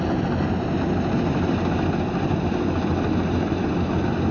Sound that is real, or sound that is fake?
real